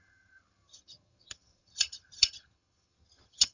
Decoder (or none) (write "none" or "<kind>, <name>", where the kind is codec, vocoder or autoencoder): vocoder, HiFi-GAN